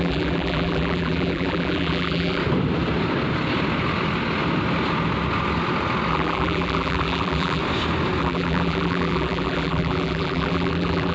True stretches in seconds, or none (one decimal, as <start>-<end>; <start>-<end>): 2.4-6.1; 7.6-8.2